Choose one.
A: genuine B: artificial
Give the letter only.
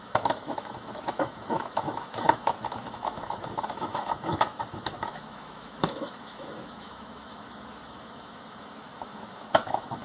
B